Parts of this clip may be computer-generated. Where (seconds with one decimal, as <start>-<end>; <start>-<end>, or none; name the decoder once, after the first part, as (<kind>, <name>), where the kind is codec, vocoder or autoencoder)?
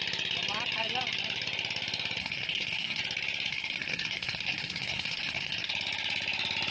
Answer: 2.2-3.0 (codec, SNAC); 3.5-5.7